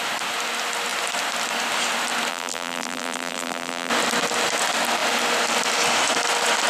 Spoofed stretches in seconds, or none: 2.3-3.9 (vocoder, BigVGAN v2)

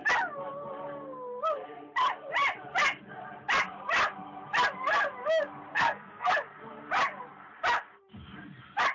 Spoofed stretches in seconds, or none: 5.7-6.3 (codec, SNAC)

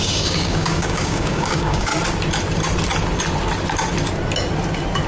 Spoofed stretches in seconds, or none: 0.0-1.9 (codec, DAC)

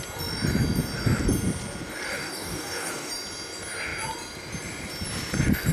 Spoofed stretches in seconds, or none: 2.1-3.1 (codec, DAC)

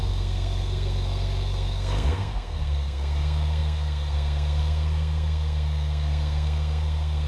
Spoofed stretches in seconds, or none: 0.0-7.3 (codec, SNAC)

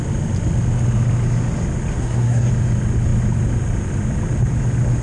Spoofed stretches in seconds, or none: 1.9-2.5 (codec, SNAC)

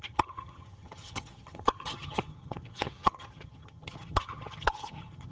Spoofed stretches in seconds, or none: 0.0-5.3 (vocoder, HiFi-GAN)

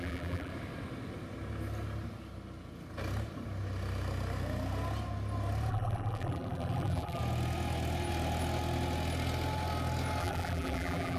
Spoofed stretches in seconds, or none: 0.0-0.5 (vocoder, BigVGAN v2); 5.7-7.2; 10.2-11.2